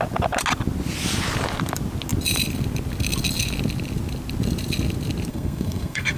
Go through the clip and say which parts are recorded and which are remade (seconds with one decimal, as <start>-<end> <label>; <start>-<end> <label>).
0.0-5.3 recorded; 5.3-6.2 remade